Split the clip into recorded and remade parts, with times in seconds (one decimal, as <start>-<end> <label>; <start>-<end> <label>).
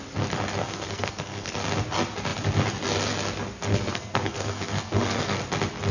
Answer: 0.0-0.6 recorded; 0.6-1.5 remade; 1.5-3.7 recorded; 3.7-5.4 remade; 5.4-5.9 recorded